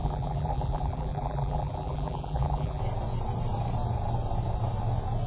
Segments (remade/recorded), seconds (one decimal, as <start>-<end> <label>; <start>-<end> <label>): 0.0-2.8 remade; 2.8-5.3 recorded